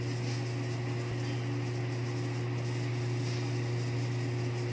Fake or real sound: real